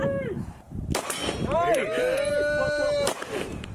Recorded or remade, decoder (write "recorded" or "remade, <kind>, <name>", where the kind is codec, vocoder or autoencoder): remade, vocoder, BigVGAN v2